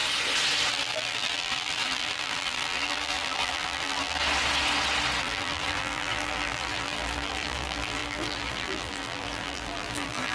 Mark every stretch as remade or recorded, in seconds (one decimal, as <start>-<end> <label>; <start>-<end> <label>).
0.0-0.7 recorded; 0.7-4.2 remade; 4.2-5.2 recorded; 5.2-10.3 remade